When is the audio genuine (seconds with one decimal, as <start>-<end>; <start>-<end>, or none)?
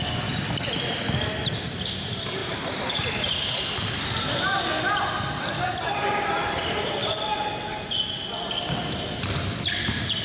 0.0-10.2